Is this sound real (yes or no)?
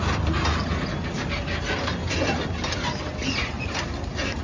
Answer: yes